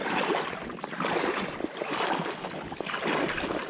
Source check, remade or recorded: recorded